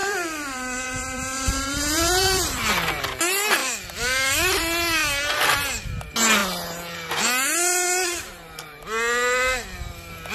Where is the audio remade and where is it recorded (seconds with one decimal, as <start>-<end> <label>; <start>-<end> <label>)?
0.0-3.0 remade; 3.0-3.6 recorded; 3.6-4.6 remade; 4.6-10.3 recorded